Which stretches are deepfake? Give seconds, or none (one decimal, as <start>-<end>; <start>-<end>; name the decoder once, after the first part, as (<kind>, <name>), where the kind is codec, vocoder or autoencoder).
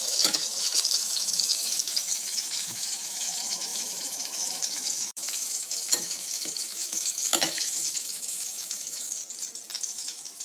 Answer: 0.0-9.2 (autoencoder, DAC-VAE); 9.8-10.4